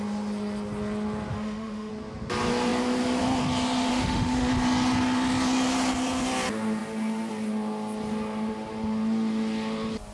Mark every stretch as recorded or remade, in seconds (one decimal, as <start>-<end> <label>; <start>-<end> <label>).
0.0-1.3 recorded; 1.3-1.9 remade; 1.9-3.9 recorded; 3.9-4.5 remade; 4.5-10.1 recorded

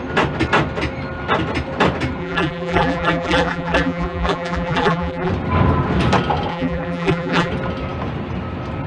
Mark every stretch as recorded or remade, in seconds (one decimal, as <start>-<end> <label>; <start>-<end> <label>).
0.0-2.2 recorded; 2.2-5.3 remade; 5.3-6.5 recorded; 6.5-7.5 remade; 7.5-8.9 recorded

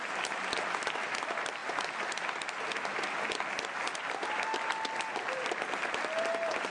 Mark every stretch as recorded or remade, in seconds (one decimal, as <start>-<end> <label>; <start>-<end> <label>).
0.0-6.7 recorded

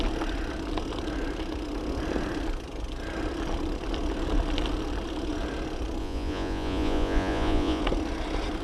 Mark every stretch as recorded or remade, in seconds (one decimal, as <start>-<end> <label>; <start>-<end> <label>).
0.0-6.0 recorded; 6.0-7.8 remade; 7.8-8.6 recorded

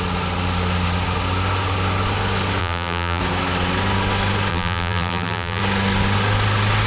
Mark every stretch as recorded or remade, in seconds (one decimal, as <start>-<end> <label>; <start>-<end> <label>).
0.0-2.6 recorded; 2.6-3.2 remade; 3.2-4.5 recorded; 4.5-5.6 remade; 5.6-6.9 recorded

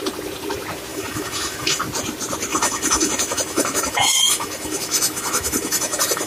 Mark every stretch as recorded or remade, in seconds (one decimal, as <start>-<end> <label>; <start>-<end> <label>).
0.0-0.9 recorded; 0.9-1.8 remade; 1.8-2.5 recorded; 2.5-6.3 remade